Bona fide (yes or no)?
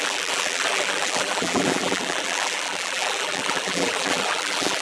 no